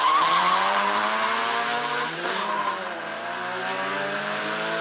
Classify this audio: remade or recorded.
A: remade